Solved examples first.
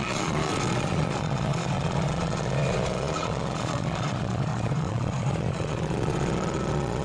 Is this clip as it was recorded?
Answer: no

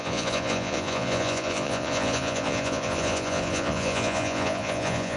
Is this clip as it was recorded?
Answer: no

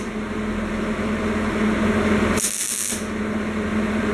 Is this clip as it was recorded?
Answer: yes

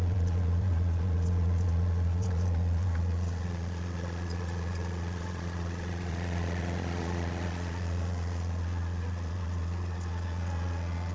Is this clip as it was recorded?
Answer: no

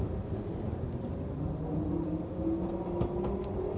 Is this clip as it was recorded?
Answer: yes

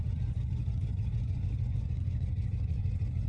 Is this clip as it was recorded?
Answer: no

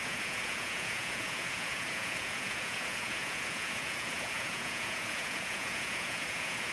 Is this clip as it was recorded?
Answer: no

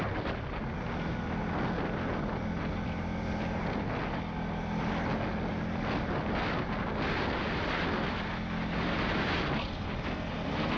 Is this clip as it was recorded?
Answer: yes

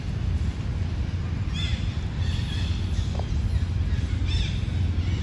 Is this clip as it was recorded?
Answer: yes